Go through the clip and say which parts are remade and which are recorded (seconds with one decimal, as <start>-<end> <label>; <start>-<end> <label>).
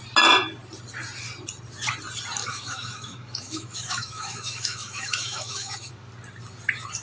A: 0.0-2.4 recorded; 2.4-5.9 remade; 5.9-7.0 recorded